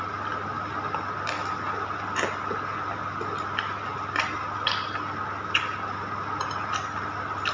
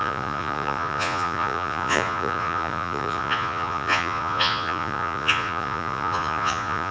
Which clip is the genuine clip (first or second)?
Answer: first